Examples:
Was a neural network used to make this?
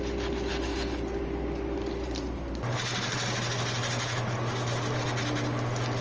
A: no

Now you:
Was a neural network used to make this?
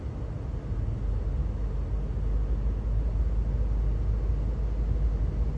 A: no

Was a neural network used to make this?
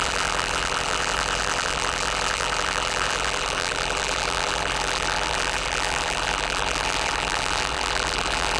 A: yes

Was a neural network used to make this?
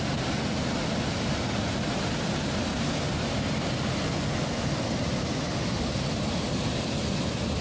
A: no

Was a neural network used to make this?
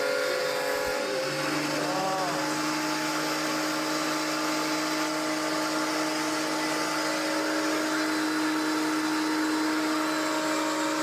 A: no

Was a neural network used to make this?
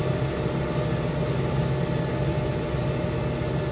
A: no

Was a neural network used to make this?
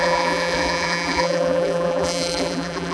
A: yes